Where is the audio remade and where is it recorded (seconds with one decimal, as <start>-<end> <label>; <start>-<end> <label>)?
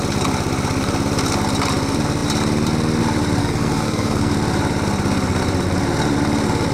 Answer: 0.0-3.4 recorded; 3.4-4.3 remade; 4.3-6.7 recorded